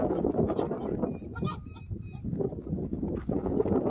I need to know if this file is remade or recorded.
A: recorded